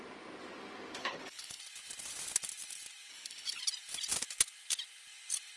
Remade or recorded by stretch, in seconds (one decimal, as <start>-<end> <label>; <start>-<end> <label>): 0.0-1.0 recorded; 1.0-1.6 remade; 1.6-3.1 recorded; 3.1-3.6 remade; 3.6-5.6 recorded